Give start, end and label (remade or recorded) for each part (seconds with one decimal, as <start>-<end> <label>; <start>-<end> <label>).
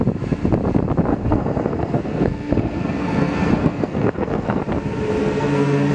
0.0-1.1 recorded; 1.1-4.6 remade; 4.6-5.2 recorded; 5.2-5.9 remade